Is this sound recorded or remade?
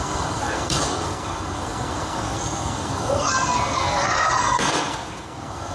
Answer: remade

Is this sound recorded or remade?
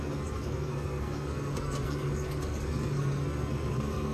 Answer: remade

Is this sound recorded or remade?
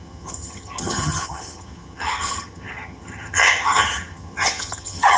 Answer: remade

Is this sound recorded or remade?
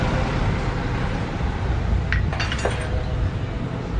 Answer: recorded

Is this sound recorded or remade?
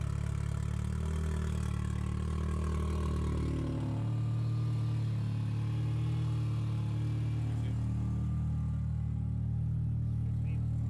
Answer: recorded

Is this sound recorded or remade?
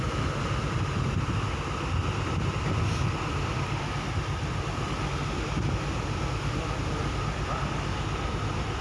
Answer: recorded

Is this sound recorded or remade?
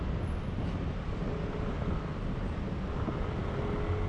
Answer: recorded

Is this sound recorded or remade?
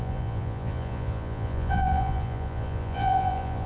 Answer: remade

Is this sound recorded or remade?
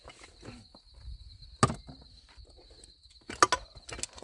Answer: recorded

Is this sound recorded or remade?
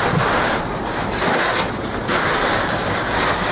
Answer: remade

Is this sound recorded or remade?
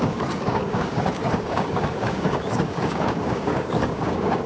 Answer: remade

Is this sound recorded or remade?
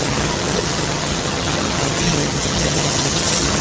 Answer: remade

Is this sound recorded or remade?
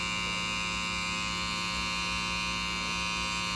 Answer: recorded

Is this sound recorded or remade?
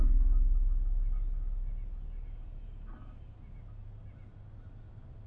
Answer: recorded